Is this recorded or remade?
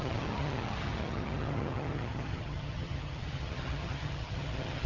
remade